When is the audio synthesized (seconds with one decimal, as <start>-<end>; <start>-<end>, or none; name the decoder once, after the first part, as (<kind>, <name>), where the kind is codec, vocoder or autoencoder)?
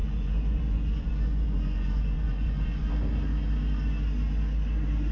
0.0-2.9 (vocoder, Vocos)